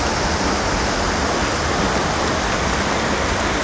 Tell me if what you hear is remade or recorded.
recorded